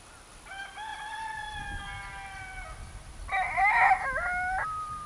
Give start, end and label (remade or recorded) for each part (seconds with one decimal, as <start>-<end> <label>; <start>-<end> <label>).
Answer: 0.0-5.1 recorded